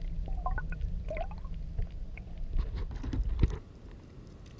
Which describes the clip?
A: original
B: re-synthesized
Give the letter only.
A